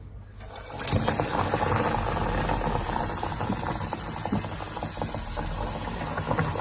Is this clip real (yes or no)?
yes